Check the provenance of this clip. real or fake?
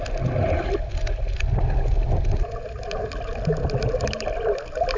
real